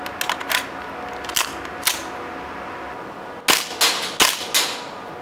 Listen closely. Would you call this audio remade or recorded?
recorded